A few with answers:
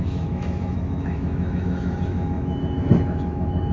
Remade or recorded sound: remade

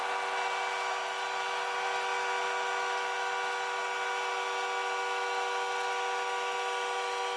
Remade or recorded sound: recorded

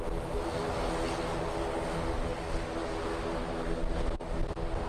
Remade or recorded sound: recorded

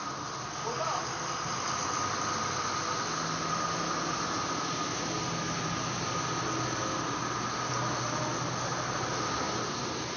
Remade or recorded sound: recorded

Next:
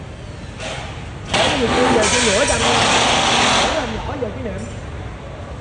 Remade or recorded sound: recorded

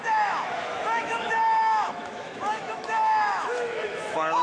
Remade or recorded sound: remade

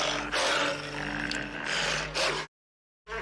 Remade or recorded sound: recorded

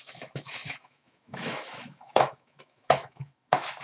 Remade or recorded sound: remade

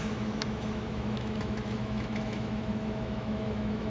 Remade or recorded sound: remade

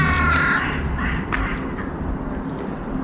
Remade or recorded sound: recorded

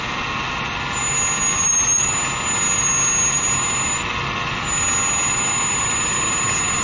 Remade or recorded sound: recorded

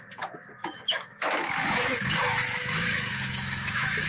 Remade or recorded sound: remade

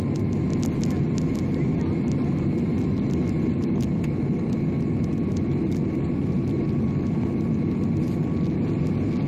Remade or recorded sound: recorded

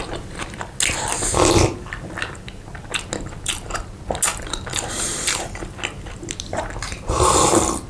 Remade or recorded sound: recorded